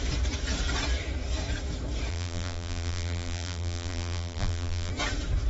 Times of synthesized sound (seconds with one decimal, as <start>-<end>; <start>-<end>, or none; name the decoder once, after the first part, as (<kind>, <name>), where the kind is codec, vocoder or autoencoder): 2.1-4.9 (vocoder, BigVGAN v2)